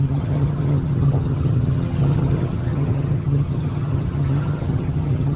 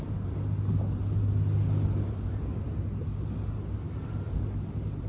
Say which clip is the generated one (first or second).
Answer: first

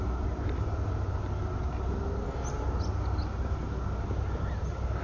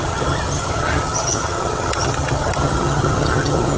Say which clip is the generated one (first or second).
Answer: second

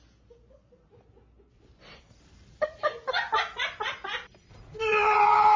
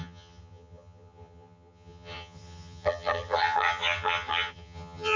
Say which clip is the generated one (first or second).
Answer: second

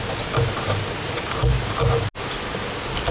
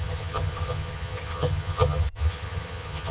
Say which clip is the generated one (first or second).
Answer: second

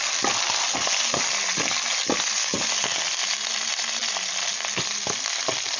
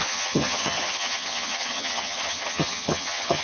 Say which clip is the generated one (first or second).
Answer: second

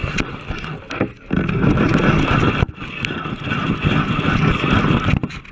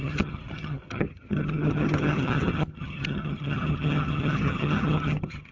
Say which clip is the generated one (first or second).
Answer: second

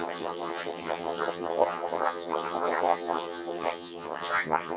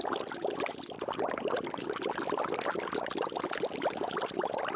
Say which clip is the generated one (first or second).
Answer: first